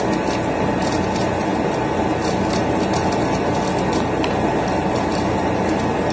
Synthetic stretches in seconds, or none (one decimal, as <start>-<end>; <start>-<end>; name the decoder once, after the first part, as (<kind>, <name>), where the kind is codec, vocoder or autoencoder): none